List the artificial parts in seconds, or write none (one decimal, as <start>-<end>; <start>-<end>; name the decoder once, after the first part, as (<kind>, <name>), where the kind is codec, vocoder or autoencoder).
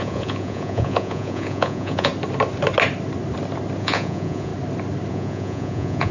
0.0-2.1 (vocoder, Vocos); 3.8-4.5; 5.1-6.1